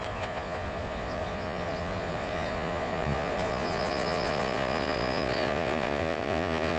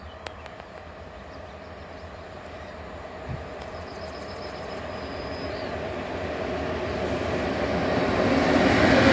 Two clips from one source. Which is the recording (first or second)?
second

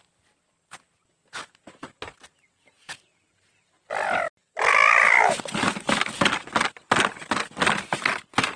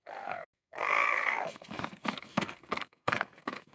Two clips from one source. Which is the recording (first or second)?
first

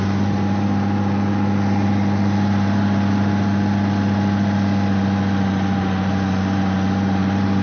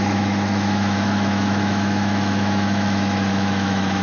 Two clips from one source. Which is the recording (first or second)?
first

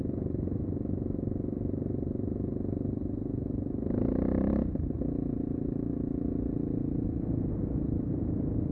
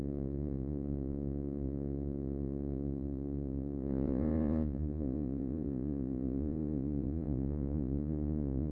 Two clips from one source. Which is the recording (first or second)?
first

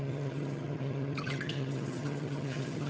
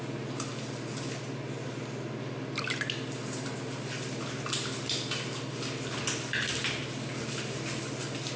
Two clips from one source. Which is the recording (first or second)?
second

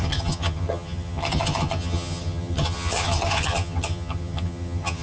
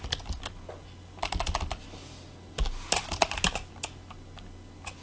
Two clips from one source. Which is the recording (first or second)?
second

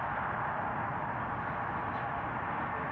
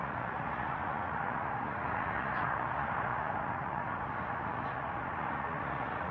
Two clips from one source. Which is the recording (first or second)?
first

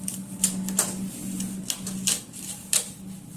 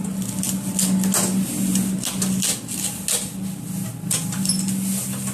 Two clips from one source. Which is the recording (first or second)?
second